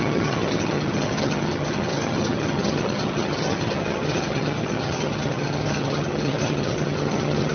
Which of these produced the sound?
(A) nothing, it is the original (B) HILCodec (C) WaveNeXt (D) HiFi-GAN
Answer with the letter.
D